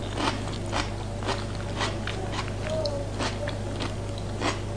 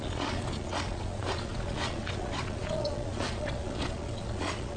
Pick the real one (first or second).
first